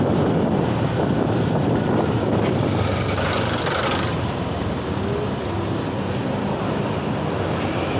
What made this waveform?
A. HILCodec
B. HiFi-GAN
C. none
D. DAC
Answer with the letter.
C